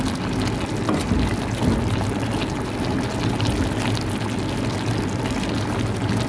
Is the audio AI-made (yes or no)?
no